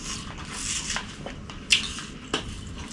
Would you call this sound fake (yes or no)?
no